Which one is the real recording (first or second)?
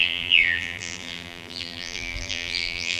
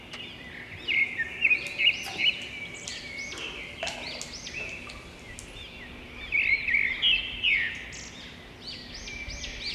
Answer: second